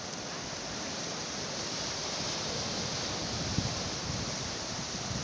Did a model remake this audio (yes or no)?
no